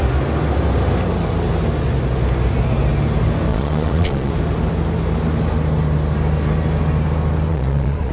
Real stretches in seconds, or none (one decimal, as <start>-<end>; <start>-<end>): 0.0-3.5; 4.3-7.5

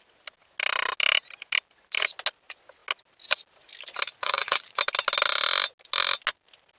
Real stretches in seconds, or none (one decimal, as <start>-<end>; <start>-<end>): 0.0-4.1; 4.8-6.8

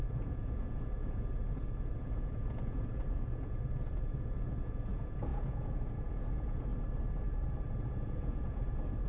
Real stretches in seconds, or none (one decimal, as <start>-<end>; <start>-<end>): 6.7-7.7

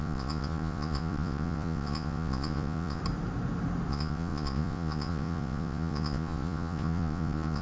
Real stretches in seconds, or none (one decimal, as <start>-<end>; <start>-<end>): 3.0-3.9

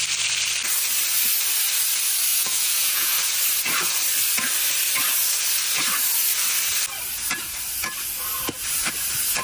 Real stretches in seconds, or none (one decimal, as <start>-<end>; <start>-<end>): 0.0-2.3; 3.1-9.4

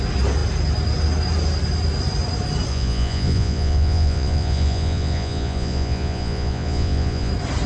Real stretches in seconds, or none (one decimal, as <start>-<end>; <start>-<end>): 0.0-2.7; 7.3-7.7